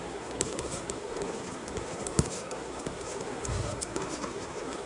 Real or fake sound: fake